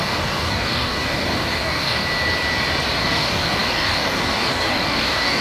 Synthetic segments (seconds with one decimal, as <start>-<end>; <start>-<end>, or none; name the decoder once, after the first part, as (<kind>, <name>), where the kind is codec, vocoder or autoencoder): 0.0-2.0 (codec, DAC); 3.0-5.4